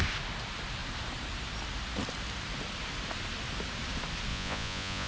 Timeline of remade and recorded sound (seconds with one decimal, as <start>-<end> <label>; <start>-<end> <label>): 0.0-4.3 recorded; 4.3-5.1 remade